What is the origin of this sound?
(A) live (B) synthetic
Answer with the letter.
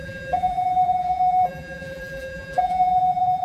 B